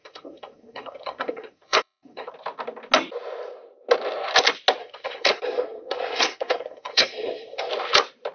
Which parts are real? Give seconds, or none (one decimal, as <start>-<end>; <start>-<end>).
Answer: 2.3-4.8; 7.7-8.3